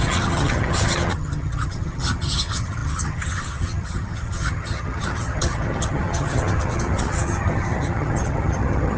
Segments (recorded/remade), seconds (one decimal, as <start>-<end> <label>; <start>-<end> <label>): 0.0-9.0 remade